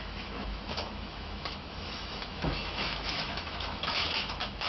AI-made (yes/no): yes